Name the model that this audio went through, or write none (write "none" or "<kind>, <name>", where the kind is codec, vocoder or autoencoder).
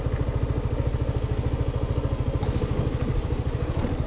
none